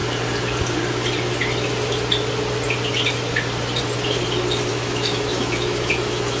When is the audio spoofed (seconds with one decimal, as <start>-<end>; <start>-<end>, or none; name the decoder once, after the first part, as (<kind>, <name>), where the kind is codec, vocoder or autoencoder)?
4.7-6.4 (autoencoder, DAC-VAE)